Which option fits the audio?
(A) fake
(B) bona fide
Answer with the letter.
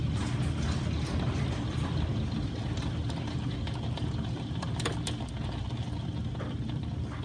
B